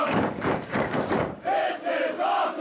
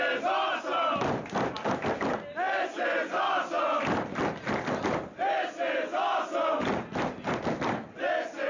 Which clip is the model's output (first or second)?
first